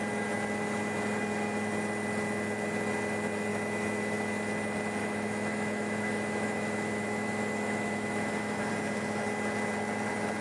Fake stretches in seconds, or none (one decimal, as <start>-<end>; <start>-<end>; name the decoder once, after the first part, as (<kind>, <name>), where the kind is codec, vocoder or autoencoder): 3.5-4.2 (autoencoder, DAC-VAE); 5.0-8.7